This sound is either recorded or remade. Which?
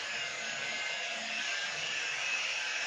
remade